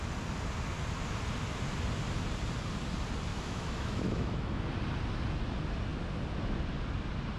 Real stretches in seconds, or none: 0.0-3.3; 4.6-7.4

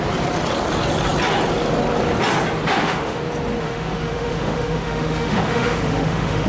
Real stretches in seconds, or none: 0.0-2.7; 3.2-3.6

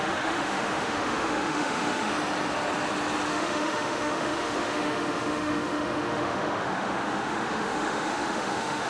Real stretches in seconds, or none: 2.1-3.3

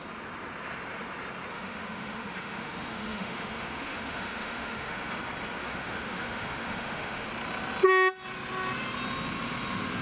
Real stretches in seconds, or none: 0.0-1.5; 5.1-5.6; 7.3-10.0

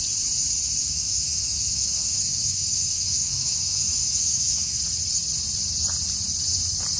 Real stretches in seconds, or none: 0.0-0.8; 4.8-7.0

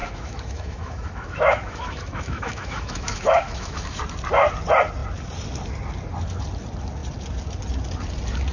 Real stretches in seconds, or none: 4.0-8.5

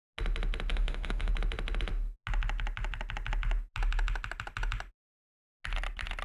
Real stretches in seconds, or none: 0.0-0.7; 1.3-6.2